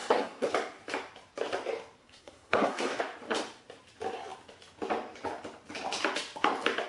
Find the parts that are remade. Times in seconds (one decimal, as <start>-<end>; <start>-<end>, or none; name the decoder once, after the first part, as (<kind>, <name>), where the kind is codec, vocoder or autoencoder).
0.0-0.5 (codec, SNAC); 2.0-3.0